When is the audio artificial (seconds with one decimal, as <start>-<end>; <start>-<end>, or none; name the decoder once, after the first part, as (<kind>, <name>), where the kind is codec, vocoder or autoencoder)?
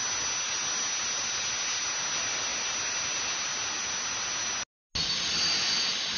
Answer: none